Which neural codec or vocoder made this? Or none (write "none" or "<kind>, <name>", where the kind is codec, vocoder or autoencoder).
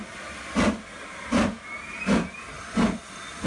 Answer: none